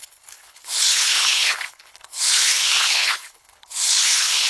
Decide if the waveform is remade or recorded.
remade